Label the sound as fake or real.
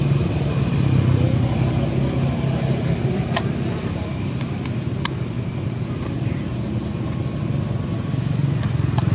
real